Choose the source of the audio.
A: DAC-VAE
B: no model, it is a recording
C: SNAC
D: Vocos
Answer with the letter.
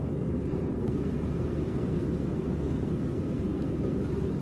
C